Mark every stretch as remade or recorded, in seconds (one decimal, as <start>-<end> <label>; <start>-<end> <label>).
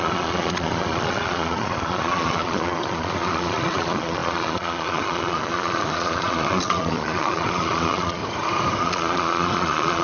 0.0-8.2 remade; 8.2-8.8 recorded; 8.8-10.0 remade